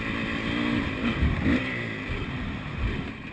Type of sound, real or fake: real